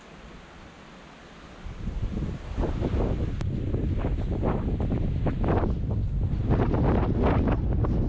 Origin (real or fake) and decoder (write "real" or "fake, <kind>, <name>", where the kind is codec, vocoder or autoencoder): real